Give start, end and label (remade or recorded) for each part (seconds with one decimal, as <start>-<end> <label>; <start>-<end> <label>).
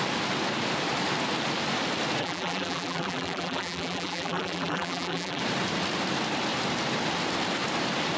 0.0-2.2 recorded; 2.2-5.4 remade; 5.4-8.2 recorded